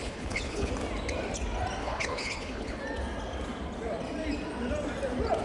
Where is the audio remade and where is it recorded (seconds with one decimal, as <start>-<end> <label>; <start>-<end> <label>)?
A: 0.0-0.7 remade; 0.7-1.8 recorded; 1.8-2.8 remade; 2.8-5.4 recorded